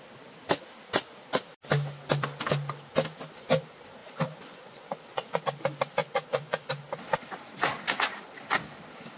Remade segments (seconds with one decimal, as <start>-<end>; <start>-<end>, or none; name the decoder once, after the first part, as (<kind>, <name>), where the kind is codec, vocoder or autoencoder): 4.0-5.4 (vocoder, Vocos); 6.0-6.7